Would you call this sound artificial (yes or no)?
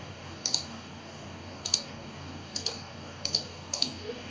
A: yes